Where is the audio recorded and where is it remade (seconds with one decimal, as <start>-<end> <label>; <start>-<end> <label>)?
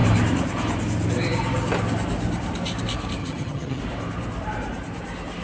0.0-3.2 recorded; 3.2-3.8 remade; 3.8-5.4 recorded